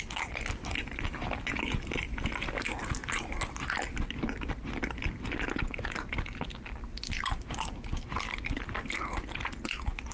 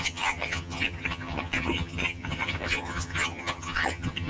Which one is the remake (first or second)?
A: second